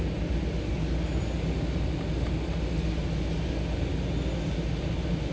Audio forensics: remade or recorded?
recorded